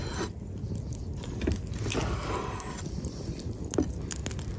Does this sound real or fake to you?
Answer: real